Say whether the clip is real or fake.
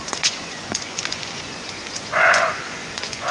fake